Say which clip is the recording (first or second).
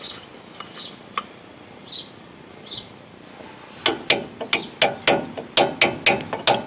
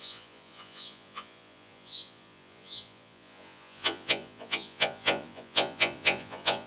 first